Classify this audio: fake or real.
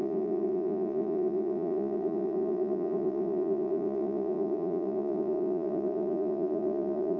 fake